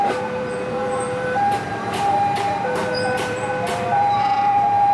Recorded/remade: remade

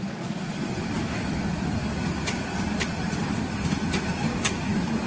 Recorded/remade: recorded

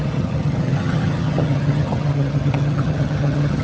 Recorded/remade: remade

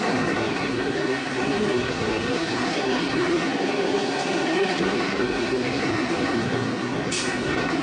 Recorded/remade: remade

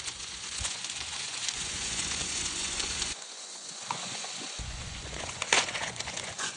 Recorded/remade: remade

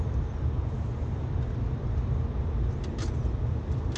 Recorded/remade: recorded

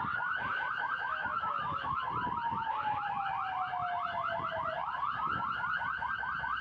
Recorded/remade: recorded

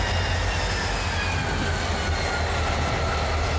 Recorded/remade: recorded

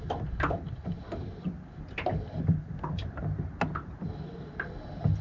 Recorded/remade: recorded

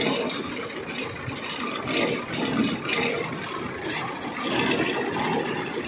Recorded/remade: recorded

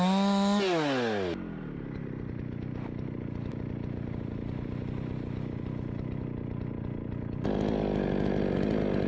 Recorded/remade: recorded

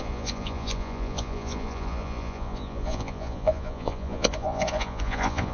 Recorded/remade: remade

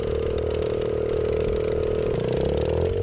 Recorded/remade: recorded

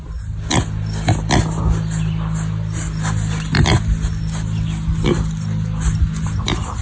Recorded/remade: recorded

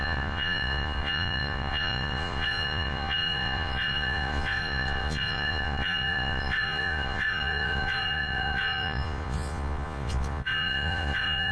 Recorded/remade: remade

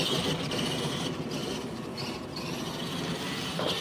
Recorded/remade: recorded